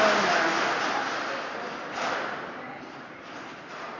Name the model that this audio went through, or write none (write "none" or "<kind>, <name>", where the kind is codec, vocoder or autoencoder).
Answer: none